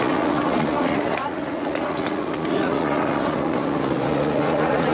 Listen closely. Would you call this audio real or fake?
fake